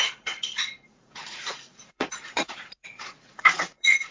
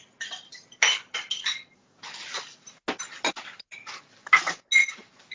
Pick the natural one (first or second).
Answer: second